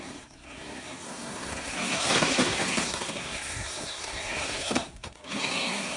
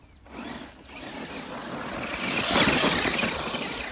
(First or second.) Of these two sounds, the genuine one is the second